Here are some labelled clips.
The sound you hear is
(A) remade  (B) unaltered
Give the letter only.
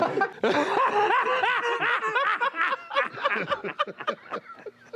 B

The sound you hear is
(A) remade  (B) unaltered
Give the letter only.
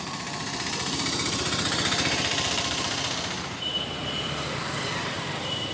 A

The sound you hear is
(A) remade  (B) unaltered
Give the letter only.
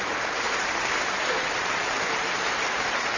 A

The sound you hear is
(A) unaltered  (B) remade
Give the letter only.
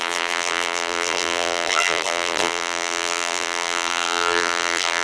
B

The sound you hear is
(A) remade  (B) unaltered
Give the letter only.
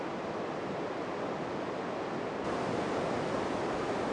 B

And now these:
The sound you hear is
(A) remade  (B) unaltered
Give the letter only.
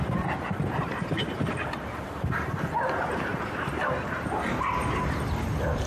A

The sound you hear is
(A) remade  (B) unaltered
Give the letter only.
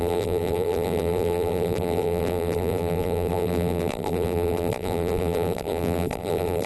A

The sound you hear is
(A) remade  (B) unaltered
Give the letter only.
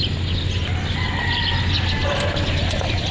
B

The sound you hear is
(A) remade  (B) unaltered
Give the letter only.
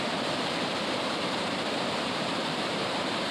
A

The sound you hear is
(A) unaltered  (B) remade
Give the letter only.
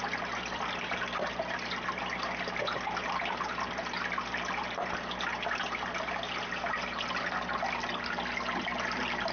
A